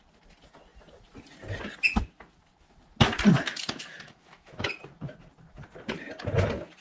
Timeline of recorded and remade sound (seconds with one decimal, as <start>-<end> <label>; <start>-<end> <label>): 0.0-3.9 recorded; 3.9-4.7 remade; 4.7-6.8 recorded